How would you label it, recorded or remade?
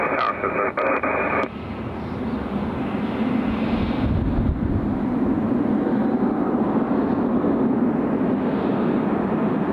recorded